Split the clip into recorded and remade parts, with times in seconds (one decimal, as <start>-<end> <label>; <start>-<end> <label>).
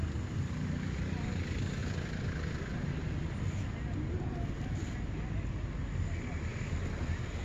0.0-7.4 recorded